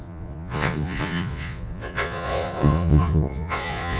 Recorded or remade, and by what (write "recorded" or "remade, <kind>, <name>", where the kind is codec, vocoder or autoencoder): remade, vocoder, Vocos